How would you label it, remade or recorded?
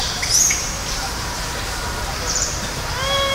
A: remade